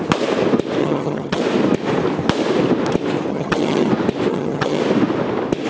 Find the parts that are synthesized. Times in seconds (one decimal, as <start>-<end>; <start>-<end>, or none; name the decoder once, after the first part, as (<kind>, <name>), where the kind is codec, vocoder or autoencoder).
0.8-1.4 (vocoder, HiFi-GAN); 3.3-3.9; 4.3-4.8